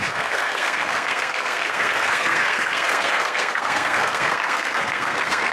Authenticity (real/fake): fake